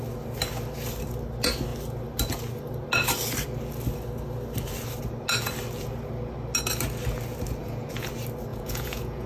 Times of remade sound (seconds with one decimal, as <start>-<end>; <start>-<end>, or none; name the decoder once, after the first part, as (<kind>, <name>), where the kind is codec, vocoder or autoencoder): 7.6-8.1 (vocoder, Vocos); 8.5-9.3